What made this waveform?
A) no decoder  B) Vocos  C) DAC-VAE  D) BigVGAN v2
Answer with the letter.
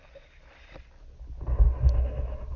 A